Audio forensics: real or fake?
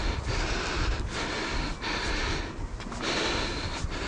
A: real